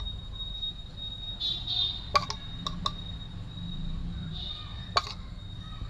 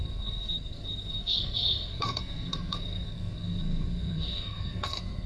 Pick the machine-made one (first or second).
second